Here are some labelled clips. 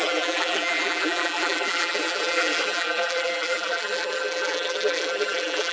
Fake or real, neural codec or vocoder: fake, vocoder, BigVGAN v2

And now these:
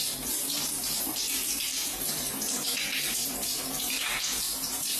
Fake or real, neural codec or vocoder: fake, vocoder, BigVGAN v2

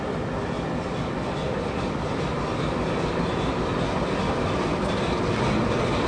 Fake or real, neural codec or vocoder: real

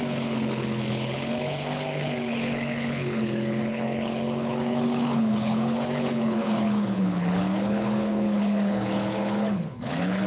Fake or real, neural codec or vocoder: fake, codec, HILCodec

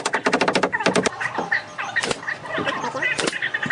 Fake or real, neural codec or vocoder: real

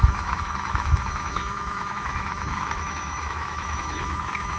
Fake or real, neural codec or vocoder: fake, autoencoder, DAC-VAE